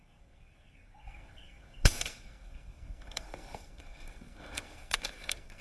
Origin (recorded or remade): remade